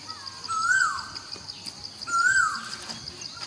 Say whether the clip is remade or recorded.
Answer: recorded